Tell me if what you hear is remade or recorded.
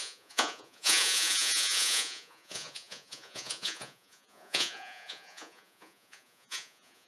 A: remade